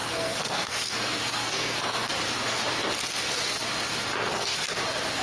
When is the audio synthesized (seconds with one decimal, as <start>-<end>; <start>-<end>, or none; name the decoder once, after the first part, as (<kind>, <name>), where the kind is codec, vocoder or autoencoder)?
0.0-2.1 (codec, SNAC); 4.2-4.8